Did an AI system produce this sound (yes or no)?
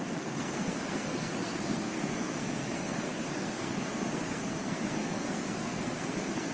yes